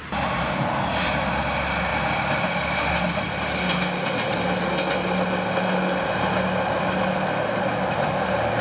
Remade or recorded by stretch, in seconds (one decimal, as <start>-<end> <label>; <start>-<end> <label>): 0.0-8.6 recorded